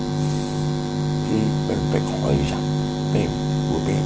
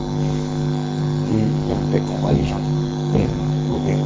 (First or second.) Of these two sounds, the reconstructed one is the second